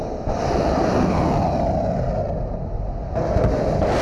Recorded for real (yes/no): yes